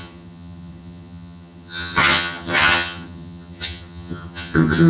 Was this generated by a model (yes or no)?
yes